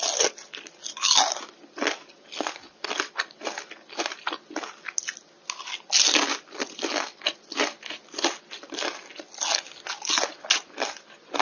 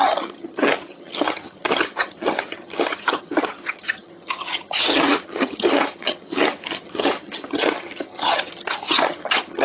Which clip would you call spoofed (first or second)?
second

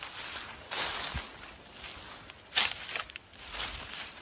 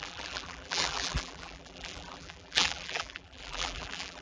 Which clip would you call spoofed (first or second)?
second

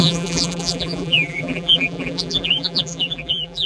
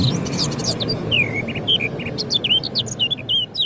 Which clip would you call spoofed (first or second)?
first